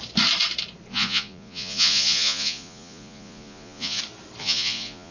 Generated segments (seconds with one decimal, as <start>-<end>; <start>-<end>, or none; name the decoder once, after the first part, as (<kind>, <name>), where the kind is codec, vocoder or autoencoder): 0.9-4.0 (vocoder, Vocos); 4.4-5.1